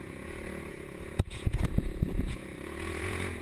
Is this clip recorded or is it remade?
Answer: remade